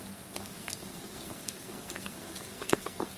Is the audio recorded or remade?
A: remade